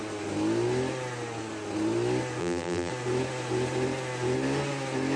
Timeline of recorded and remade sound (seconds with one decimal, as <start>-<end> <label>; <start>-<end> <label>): 0.0-2.4 recorded; 2.4-2.9 remade; 2.9-5.2 recorded